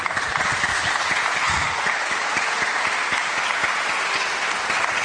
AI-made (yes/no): no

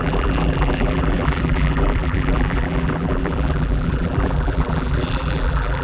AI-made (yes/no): yes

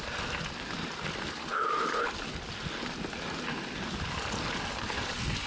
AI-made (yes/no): no